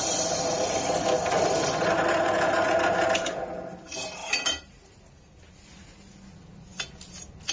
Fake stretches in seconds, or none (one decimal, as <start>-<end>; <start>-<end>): 4.2-5.0